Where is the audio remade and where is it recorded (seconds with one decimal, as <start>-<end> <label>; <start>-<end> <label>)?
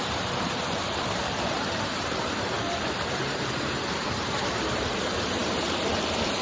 0.0-6.4 remade